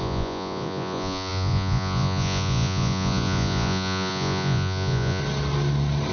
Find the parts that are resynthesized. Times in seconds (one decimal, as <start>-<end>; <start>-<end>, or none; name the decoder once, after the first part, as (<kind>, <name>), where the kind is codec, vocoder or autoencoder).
0.0-5.2 (vocoder, Vocos)